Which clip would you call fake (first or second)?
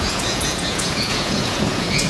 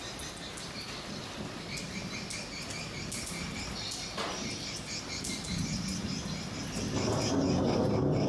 first